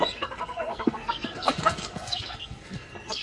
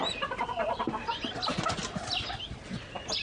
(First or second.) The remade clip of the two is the first